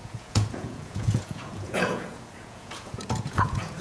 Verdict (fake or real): fake